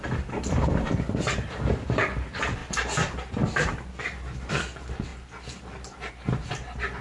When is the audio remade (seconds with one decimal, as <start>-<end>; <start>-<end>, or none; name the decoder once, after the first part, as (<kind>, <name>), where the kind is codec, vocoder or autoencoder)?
2.6-4.5 (vocoder, BigVGAN v2)

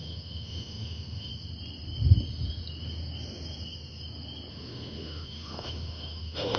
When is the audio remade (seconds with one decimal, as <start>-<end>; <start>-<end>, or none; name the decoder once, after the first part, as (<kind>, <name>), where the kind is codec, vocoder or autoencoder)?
0.0-1.3 (autoencoder, DAC-VAE); 4.5-6.6

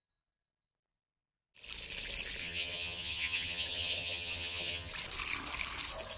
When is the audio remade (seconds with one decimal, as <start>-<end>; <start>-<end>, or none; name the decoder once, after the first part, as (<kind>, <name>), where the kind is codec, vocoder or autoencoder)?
2.4-4.9 (vocoder, HiFi-GAN)

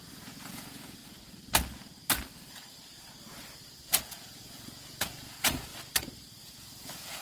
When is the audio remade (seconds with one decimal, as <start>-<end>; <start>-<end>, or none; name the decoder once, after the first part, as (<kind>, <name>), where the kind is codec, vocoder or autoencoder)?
0.0-1.0 (vocoder, Vocos); 4.0-5.7; 6.4-7.2

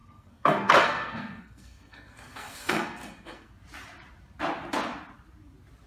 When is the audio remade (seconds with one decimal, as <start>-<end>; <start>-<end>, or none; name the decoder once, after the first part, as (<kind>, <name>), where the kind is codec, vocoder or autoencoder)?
0.0-3.5 (codec, SNAC)